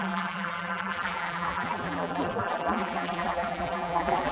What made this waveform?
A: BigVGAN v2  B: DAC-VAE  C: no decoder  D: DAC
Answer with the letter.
A